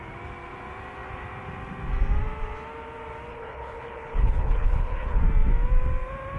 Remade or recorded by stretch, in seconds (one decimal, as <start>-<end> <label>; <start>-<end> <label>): 0.0-3.3 recorded; 3.3-5.2 remade; 5.2-6.4 recorded